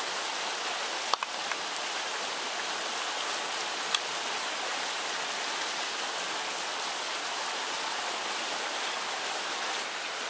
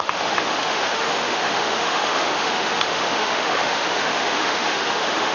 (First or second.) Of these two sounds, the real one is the first